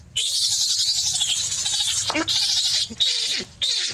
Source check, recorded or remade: recorded